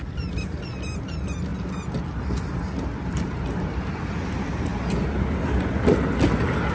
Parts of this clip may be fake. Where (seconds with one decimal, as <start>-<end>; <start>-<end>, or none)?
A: none